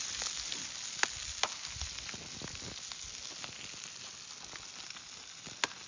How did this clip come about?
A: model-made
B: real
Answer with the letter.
B